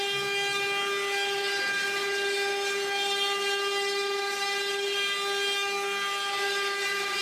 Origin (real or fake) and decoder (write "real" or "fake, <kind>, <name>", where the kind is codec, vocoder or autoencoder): real